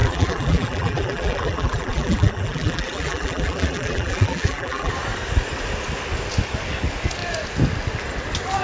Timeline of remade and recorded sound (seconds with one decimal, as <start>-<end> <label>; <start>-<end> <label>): 0.0-4.9 remade; 4.9-8.6 recorded